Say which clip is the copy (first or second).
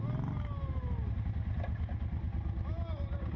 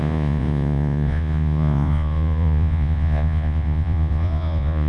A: second